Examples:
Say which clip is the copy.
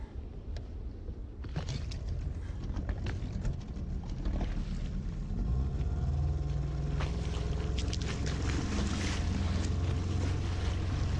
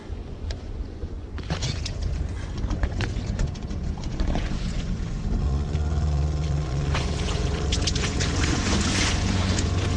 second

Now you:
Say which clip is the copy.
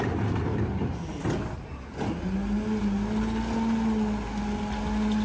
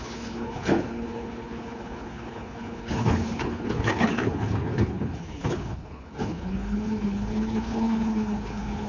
second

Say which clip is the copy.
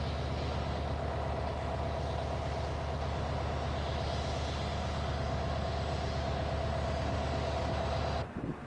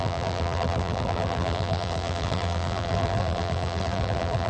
second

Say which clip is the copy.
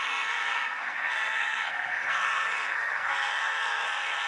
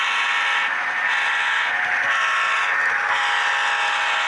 first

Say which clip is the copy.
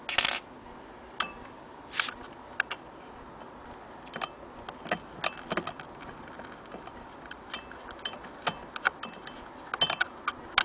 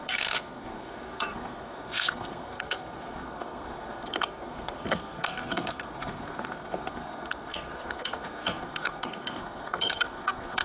second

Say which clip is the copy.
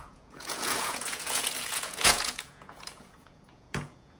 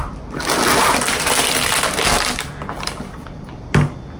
first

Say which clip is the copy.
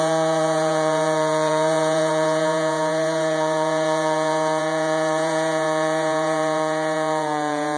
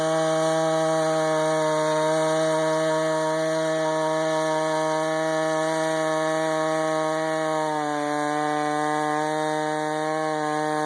first